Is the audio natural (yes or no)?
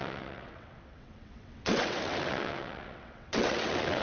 no